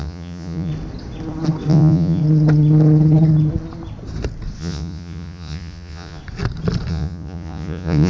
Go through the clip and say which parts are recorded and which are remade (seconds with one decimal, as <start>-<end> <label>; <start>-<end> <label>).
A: 0.0-0.7 remade; 0.7-1.7 recorded; 1.7-2.2 remade; 2.2-4.6 recorded; 4.6-6.2 remade; 6.2-6.9 recorded; 6.9-8.1 remade

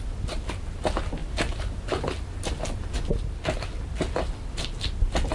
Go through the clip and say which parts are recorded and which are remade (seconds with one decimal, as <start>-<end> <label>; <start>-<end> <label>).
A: 0.0-5.3 recorded

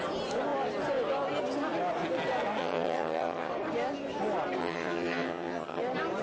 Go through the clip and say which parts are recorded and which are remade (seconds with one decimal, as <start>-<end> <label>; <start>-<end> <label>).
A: 0.0-2.6 recorded; 2.6-3.5 remade; 3.5-4.6 recorded; 4.6-5.8 remade; 5.8-6.2 recorded

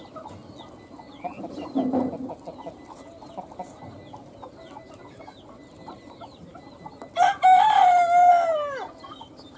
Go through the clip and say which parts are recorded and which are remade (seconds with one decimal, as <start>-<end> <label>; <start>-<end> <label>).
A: 0.0-9.6 recorded

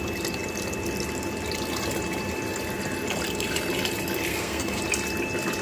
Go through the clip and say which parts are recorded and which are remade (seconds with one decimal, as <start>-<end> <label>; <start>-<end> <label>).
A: 0.0-4.3 recorded; 4.3-4.8 remade; 4.8-5.6 recorded

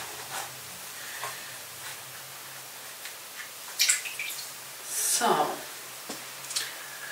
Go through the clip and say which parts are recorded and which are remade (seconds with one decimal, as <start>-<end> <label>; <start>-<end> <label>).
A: 0.0-1.9 remade; 1.9-4.2 recorded; 4.2-7.1 remade